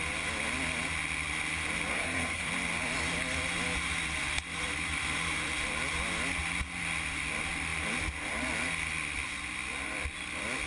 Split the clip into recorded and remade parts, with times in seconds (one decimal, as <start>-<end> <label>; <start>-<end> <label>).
0.0-1.9 recorded; 1.9-2.5 remade; 2.5-10.7 recorded